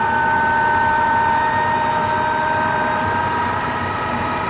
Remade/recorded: remade